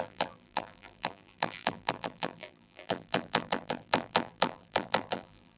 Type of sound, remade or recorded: remade